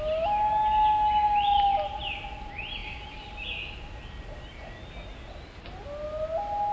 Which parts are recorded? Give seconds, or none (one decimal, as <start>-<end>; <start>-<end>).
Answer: 0.0-6.7